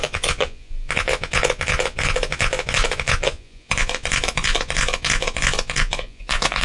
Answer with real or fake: fake